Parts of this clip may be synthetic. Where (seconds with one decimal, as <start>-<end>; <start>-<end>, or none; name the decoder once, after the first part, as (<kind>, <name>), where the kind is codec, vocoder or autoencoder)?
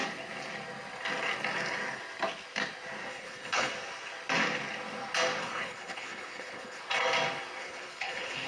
3.1-3.7 (codec, HILCodec); 5.4-6.8; 7.6-8.5